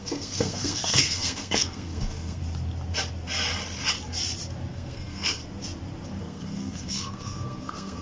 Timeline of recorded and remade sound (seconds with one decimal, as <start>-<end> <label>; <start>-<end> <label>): 0.0-2.4 remade; 2.4-4.7 recorded; 4.7-5.4 remade; 5.4-6.2 recorded; 6.2-8.0 remade